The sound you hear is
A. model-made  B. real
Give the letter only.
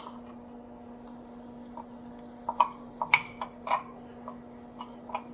B